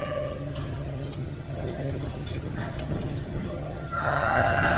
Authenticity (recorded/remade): remade